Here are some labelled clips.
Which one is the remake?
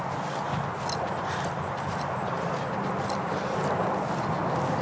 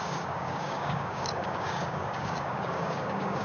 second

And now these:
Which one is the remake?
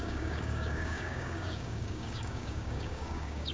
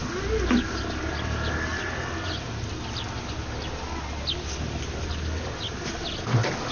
first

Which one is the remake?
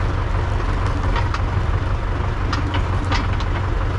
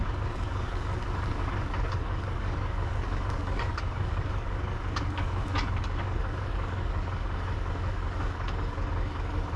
second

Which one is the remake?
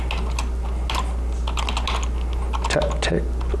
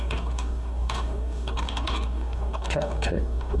second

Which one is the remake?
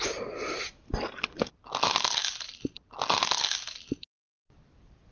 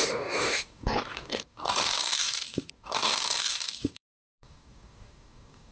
second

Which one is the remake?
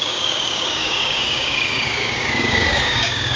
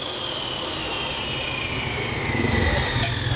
first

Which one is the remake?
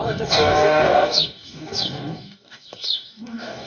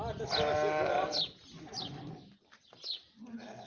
first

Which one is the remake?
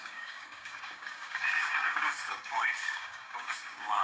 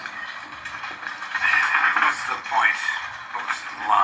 first